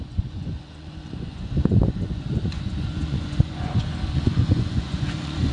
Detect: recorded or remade remade